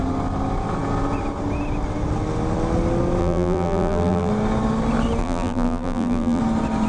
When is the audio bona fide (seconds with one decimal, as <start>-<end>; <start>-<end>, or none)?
0.0-3.2; 4.3-5.2; 6.4-6.9